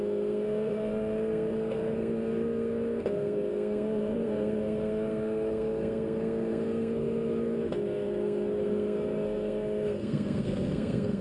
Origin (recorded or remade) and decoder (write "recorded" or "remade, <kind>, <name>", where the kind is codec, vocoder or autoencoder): remade, codec, SNAC